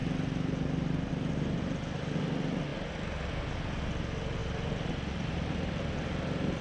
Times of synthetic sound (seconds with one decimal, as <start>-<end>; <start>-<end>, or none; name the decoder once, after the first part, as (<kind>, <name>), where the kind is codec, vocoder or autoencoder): 4.4-6.6 (vocoder, BigVGAN v2)